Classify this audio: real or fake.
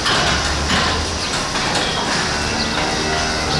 real